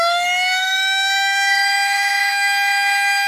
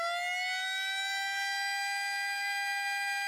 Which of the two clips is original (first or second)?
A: second